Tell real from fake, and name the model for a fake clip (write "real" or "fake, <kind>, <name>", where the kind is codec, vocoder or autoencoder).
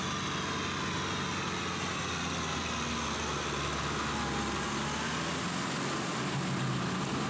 real